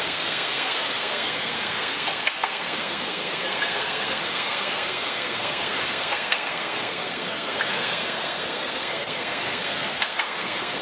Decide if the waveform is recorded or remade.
remade